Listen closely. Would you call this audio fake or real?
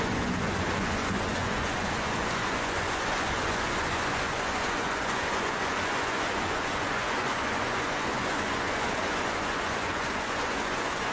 fake